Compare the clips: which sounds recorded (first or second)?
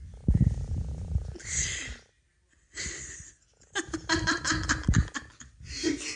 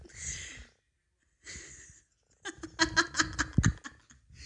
second